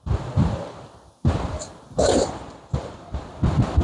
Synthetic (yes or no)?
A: no